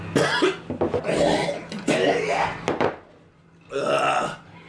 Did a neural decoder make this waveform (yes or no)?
no